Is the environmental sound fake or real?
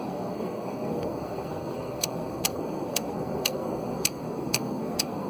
fake